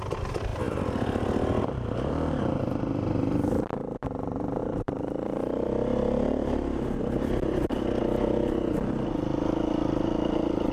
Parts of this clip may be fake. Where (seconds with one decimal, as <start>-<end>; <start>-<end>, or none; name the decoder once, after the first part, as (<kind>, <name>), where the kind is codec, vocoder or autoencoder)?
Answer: 0.5-2.6 (vocoder, BigVGAN v2); 4.6-8.0